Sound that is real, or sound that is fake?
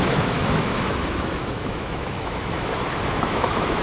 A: fake